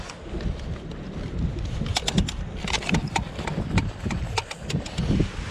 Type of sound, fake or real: real